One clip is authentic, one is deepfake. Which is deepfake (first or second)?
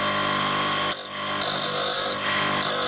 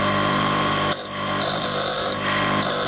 second